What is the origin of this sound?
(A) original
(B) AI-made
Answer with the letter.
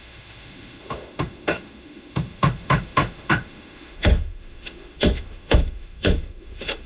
B